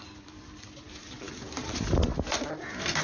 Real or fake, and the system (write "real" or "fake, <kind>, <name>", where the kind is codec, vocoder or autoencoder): real